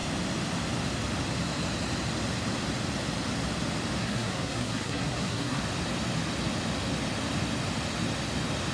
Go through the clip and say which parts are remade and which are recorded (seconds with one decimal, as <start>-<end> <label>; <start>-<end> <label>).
0.0-4.0 recorded; 4.0-5.6 remade; 5.6-8.7 recorded